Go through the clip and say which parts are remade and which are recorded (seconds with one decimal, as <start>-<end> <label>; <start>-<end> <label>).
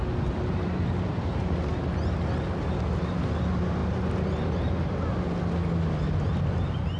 0.0-7.0 recorded